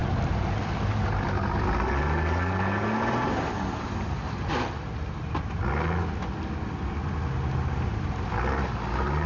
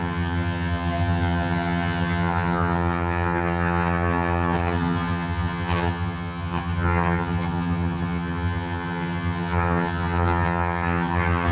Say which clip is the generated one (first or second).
second